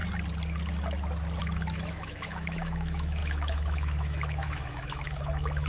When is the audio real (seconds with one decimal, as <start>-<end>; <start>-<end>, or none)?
0.0-1.4